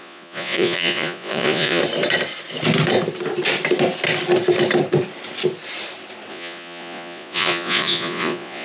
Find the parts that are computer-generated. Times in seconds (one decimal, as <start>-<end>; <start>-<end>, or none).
0.0-1.8; 6.3-8.6